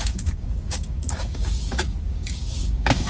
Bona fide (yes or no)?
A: no